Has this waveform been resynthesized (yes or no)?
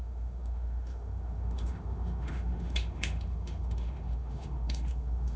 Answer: yes